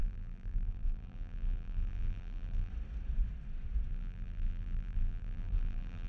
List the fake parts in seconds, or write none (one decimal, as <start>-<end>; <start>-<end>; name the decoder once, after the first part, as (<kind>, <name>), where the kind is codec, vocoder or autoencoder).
0.0-2.7 (vocoder, BigVGAN v2); 3.9-6.1